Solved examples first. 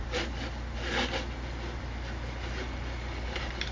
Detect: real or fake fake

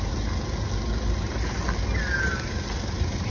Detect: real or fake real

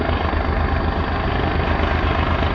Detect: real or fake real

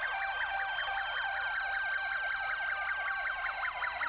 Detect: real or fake real